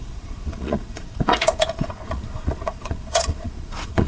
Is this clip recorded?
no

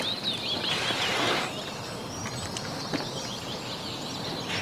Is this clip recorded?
yes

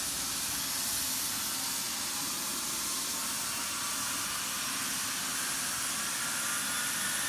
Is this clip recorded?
yes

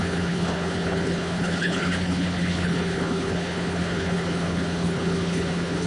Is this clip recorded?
no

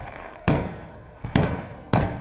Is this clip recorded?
no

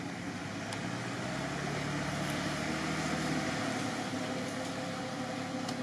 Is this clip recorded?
yes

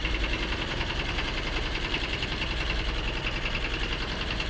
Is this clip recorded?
yes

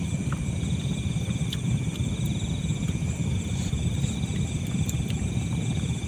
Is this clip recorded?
no